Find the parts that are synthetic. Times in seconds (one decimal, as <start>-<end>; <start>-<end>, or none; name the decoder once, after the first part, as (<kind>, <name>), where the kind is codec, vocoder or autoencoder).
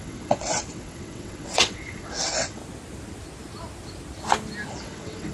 0.0-2.6 (vocoder, WaveNeXt); 4.7-5.3